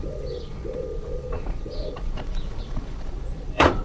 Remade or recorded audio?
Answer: remade